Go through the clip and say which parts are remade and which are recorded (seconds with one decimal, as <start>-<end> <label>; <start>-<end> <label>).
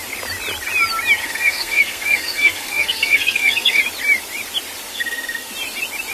0.0-1.2 recorded; 1.2-3.8 remade; 3.8-4.9 recorded; 4.9-5.5 remade; 5.5-6.1 recorded